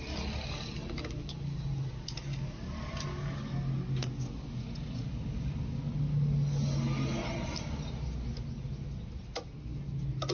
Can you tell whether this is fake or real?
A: real